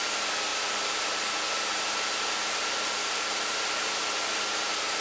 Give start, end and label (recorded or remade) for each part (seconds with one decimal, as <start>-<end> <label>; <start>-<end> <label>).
0.0-5.0 recorded

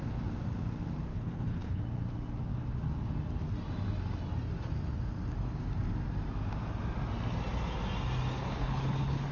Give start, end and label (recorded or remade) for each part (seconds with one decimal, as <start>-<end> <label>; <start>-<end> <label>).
0.0-1.1 recorded; 1.1-1.8 remade; 1.8-8.4 recorded; 8.4-9.3 remade

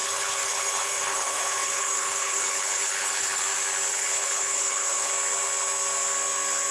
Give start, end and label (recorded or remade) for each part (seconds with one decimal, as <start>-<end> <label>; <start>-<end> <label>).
0.0-3.4 remade; 3.4-3.9 recorded; 3.9-5.1 remade; 5.1-6.7 recorded

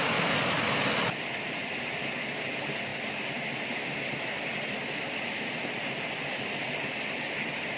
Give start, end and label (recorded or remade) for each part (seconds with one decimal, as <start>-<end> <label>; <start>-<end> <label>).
0.0-7.8 recorded

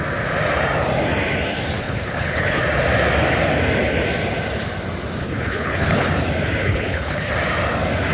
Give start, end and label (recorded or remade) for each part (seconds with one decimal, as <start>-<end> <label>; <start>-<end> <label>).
0.0-1.8 recorded; 1.8-2.6 remade; 2.6-5.2 recorded; 5.2-6.1 remade; 6.1-6.6 recorded; 6.6-7.3 remade; 7.3-8.1 recorded

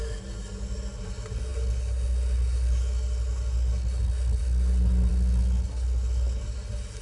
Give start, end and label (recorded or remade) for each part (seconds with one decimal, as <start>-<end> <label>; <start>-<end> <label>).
0.0-7.0 recorded

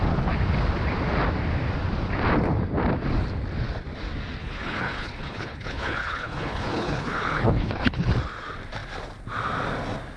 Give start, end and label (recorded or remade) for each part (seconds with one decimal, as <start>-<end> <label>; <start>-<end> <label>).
0.0-4.4 recorded; 4.4-8.1 remade; 8.1-10.2 recorded

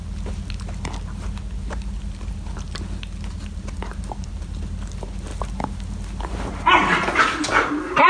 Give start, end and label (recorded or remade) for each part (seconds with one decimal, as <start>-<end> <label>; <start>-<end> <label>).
0.0-8.1 recorded